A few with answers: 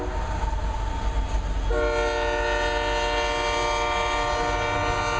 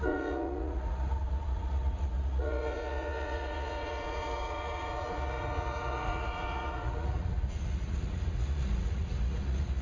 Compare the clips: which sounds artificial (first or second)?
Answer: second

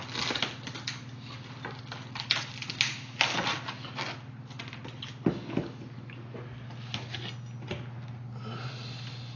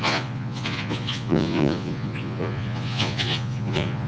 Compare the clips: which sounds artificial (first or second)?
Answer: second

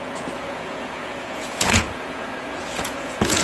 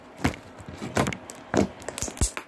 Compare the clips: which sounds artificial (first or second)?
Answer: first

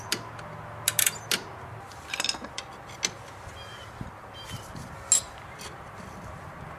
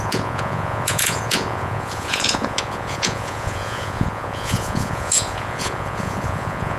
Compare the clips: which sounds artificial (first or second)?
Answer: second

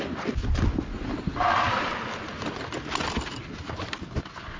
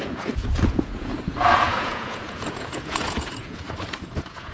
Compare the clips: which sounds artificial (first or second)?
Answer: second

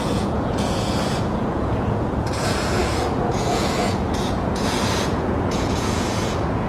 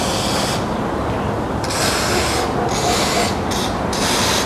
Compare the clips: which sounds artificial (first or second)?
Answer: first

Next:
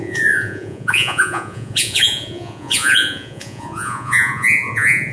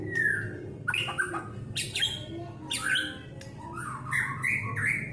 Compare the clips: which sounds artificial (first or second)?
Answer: first